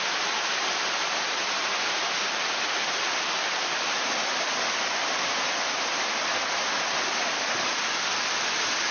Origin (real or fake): real